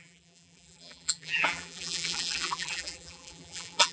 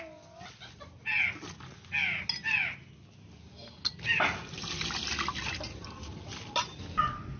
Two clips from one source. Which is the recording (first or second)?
second